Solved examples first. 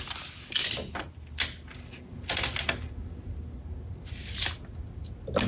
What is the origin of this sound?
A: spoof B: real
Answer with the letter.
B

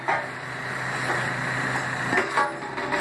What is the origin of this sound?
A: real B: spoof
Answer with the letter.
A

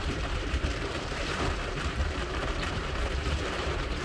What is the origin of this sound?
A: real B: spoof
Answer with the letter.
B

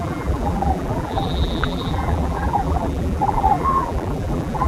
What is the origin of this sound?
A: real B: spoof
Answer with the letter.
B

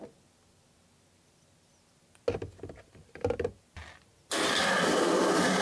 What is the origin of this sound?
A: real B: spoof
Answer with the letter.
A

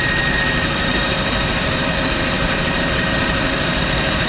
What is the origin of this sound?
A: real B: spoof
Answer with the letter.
B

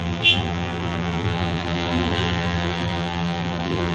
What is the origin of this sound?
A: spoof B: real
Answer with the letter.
A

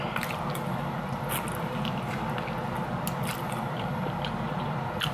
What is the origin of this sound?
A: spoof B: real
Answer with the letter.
B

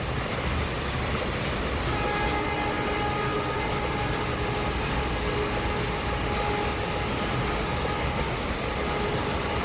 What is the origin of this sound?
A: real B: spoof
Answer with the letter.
A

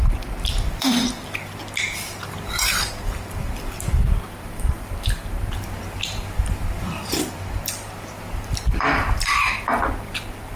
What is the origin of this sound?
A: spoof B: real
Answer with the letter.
A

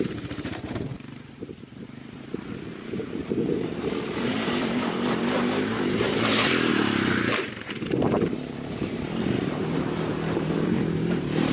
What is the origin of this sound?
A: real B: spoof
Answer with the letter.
B